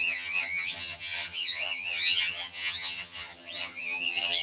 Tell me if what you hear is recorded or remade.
remade